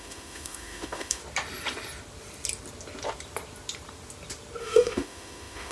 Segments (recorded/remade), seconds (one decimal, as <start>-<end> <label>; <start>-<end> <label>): 0.0-1.2 remade; 1.2-4.6 recorded; 4.6-5.7 remade